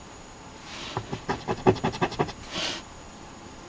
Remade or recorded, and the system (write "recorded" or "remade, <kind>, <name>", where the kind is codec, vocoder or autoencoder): remade, vocoder, BigVGAN v2